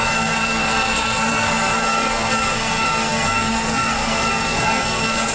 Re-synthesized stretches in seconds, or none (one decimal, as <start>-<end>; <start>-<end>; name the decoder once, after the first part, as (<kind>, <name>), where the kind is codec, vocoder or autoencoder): 0.0-5.3 (codec, SNAC)